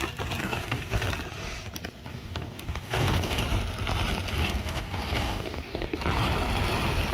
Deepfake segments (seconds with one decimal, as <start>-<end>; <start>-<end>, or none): 0.4-1.1; 2.1-3.4; 4.4-6.0